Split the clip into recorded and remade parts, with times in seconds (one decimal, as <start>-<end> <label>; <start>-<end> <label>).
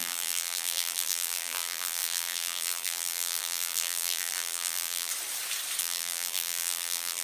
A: 0.0-5.1 remade; 5.1-5.8 recorded; 5.8-7.2 remade